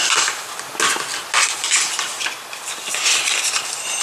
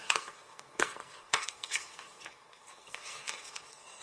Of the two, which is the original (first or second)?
first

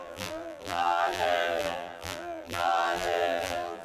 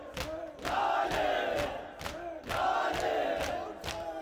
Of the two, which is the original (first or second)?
second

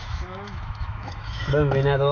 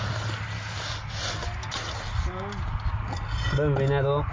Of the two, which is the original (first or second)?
second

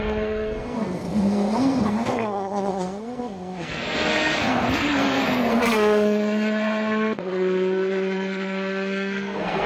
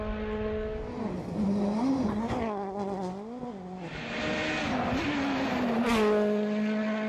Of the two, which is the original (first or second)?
second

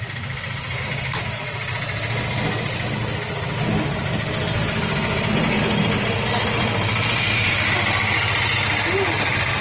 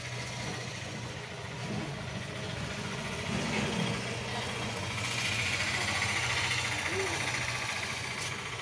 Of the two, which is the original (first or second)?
first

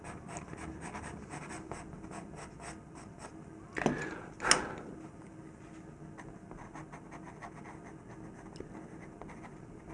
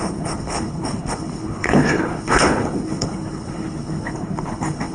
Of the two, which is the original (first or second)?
first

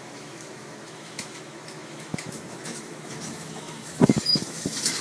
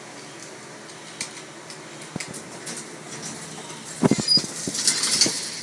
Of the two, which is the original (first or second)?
second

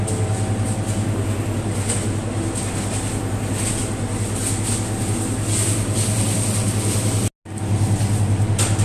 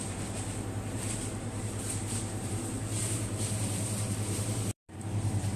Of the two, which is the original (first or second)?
first